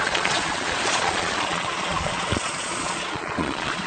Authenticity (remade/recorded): remade